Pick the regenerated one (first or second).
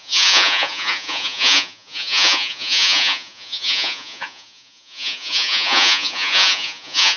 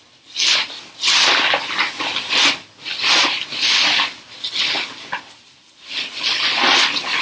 first